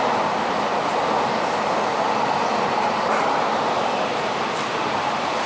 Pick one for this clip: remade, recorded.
recorded